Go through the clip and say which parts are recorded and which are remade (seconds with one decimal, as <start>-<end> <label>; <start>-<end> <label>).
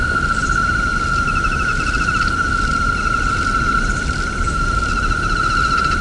0.0-6.0 recorded